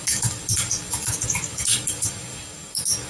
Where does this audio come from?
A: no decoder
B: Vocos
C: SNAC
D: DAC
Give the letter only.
D